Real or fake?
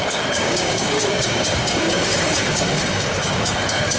fake